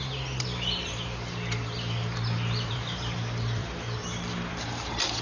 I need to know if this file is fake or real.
fake